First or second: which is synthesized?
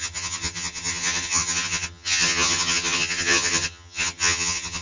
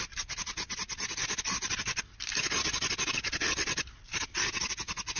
first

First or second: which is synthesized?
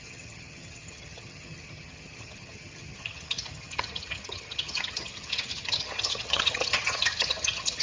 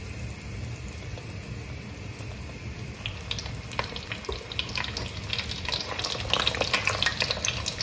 first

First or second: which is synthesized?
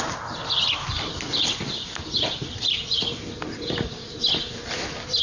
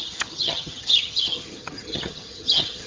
second